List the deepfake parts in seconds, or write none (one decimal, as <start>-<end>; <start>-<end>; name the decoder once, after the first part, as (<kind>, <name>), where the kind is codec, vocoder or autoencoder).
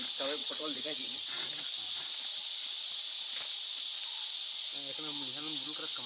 0.4-1.6 (vocoder, WaveNeXt)